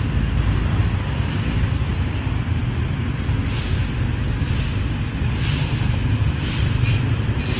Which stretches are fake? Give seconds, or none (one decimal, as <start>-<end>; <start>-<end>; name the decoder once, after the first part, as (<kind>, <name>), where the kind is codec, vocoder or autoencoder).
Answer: none